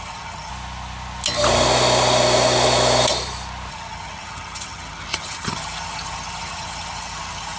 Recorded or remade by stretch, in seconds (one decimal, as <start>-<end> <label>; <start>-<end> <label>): 0.0-0.5 remade; 0.5-3.7 recorded; 3.7-7.6 remade